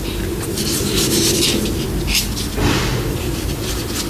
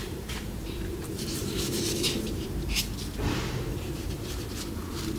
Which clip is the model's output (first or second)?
second